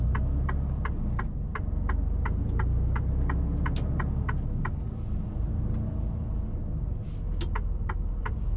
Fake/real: real